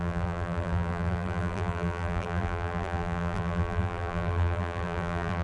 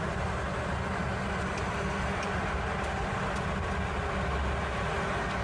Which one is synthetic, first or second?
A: first